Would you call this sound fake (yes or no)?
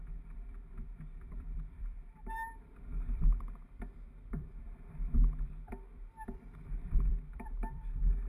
yes